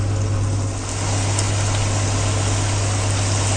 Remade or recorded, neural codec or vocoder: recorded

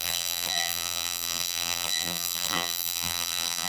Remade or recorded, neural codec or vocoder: remade, vocoder, BigVGAN v2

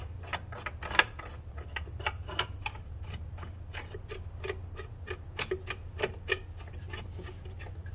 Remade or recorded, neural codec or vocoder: recorded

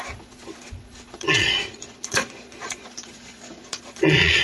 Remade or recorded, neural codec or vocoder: remade, vocoder, Vocos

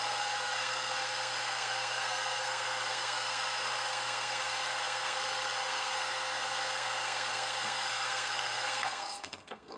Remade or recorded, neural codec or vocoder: remade, codec, SNAC